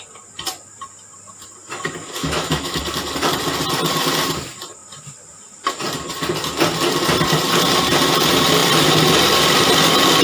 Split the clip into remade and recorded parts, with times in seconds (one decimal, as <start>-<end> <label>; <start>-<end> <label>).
0.0-2.2 recorded; 2.2-2.8 remade; 2.8-10.2 recorded